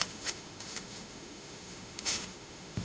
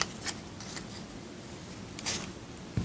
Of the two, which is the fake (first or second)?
first